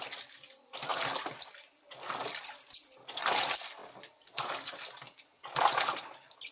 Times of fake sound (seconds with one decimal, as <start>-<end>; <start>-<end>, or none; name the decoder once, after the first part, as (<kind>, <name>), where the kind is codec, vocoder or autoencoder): none